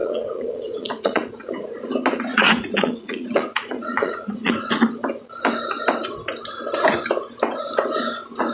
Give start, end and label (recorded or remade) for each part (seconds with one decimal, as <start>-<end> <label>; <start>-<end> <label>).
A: 0.0-1.9 remade; 1.9-2.3 recorded; 2.3-4.7 remade; 4.7-8.5 recorded